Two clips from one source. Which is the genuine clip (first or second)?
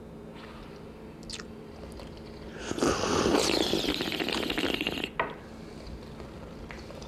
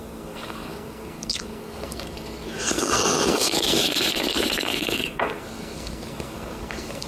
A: first